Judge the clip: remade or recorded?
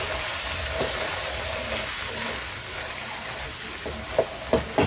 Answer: recorded